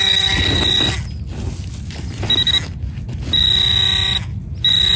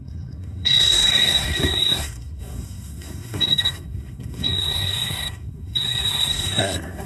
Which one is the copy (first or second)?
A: second